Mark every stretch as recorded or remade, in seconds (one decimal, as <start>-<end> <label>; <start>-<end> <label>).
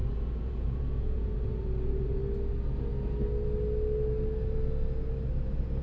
0.0-2.2 remade; 2.2-5.8 recorded